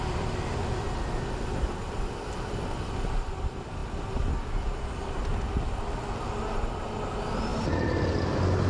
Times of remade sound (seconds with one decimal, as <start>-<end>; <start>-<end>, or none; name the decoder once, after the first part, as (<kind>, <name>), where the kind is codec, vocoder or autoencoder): none